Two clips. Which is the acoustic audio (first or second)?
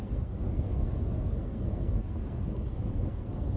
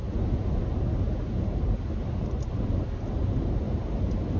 second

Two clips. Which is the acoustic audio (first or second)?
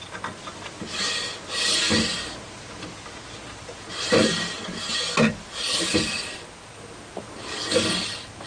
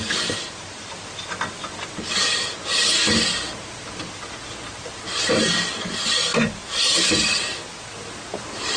first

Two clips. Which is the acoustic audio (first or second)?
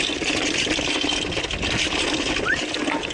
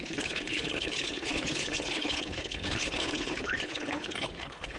first